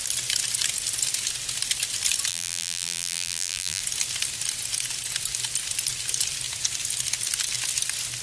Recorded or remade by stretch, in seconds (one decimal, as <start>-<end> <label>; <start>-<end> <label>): 0.0-2.3 recorded; 2.3-3.8 remade; 3.8-8.2 recorded